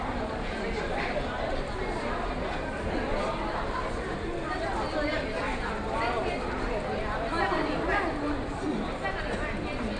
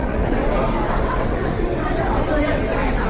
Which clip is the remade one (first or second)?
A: second